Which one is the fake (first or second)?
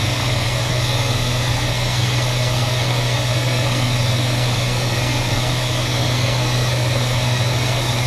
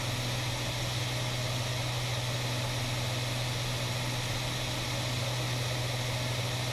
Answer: first